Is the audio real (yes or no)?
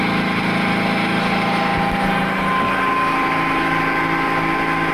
yes